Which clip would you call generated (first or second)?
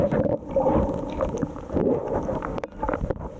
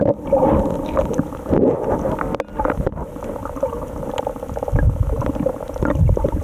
first